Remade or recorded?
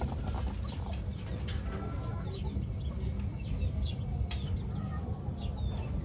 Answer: recorded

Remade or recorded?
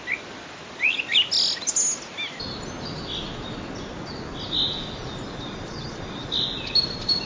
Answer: recorded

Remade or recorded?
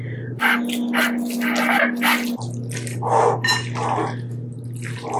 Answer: recorded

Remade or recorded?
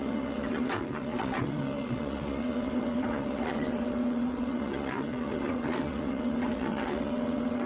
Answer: remade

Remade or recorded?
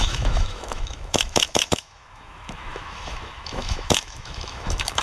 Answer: remade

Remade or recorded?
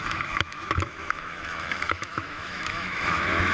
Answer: remade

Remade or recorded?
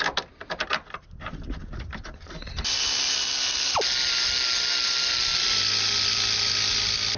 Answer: recorded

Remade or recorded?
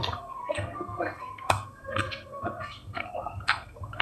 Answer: remade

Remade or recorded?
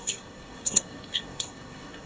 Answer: remade